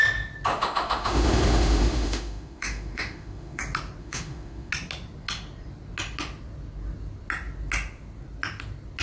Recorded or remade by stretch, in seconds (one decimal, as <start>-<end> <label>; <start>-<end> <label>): 0.0-0.5 recorded; 0.5-3.6 remade; 3.6-4.0 recorded; 4.0-4.7 remade; 4.7-9.0 recorded